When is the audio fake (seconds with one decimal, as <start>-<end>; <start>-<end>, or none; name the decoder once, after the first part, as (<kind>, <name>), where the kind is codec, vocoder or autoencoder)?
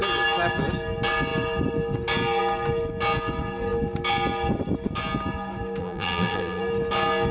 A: 5.8-6.6 (vocoder, BigVGAN v2)